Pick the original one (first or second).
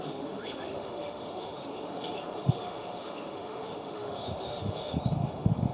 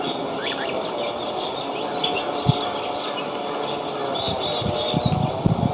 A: second